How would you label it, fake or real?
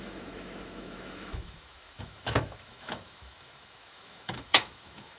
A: fake